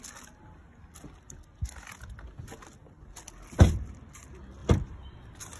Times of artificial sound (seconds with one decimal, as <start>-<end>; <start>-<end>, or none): 4.6-5.6